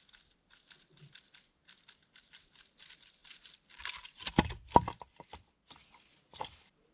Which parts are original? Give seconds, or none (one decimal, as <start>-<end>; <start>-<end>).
0.0-6.9